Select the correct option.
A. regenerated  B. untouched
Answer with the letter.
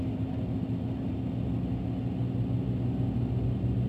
B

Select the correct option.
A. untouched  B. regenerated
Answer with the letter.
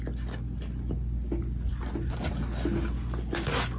A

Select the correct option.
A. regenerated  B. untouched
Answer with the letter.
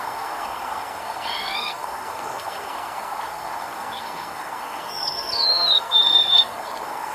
A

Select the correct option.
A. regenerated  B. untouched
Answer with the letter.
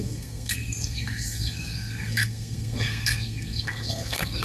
A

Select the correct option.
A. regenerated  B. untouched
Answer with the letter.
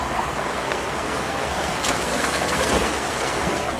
A